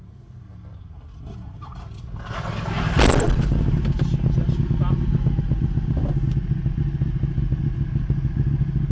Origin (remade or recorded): recorded